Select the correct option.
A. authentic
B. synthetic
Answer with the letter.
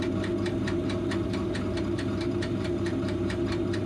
B